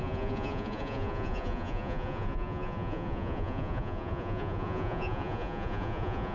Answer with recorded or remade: remade